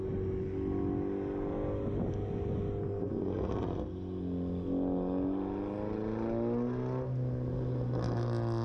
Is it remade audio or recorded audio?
recorded